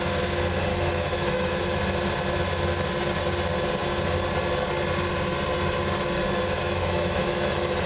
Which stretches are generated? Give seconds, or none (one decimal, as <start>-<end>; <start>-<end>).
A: 0.7-1.8; 6.6-7.9